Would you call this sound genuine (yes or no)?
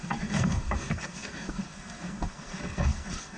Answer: no